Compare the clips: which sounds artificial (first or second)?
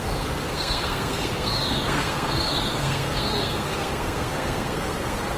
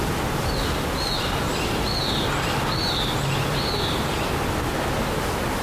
first